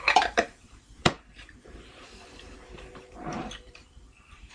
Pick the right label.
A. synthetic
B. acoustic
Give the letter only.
A